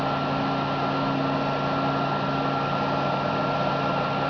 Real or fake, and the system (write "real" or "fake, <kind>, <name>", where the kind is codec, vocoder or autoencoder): real